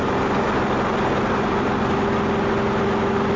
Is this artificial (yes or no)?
no